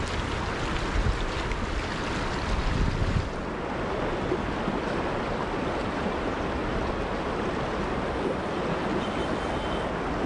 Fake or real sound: real